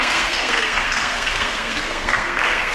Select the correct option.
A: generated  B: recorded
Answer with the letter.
A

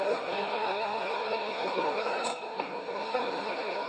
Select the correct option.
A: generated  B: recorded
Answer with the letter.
A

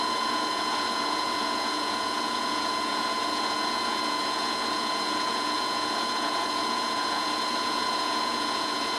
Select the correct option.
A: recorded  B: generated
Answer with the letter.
B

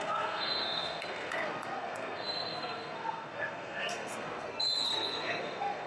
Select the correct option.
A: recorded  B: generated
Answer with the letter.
B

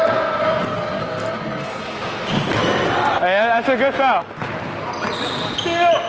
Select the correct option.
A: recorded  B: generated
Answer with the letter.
A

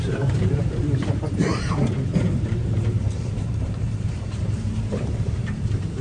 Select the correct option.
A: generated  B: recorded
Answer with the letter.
A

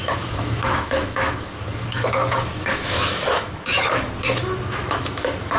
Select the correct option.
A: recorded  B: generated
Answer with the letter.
B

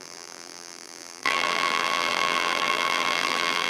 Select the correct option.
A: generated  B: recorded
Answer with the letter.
A